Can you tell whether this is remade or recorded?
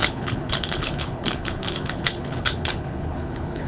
remade